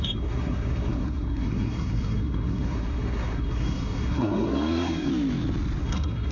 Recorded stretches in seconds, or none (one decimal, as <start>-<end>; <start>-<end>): 5.1-5.8